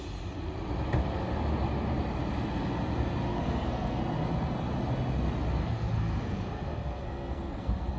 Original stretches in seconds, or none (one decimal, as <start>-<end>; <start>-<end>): 0.0-3.3; 4.0-5.6